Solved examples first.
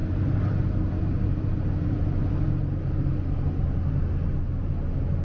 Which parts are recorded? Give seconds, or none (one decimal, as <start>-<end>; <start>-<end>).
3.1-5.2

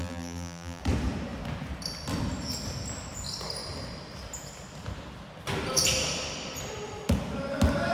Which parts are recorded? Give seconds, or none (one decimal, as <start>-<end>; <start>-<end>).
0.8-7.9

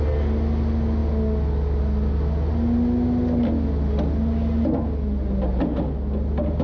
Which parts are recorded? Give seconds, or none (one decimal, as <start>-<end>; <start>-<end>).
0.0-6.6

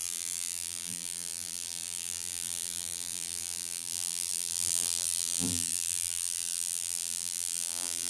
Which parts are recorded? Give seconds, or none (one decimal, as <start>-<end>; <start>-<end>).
none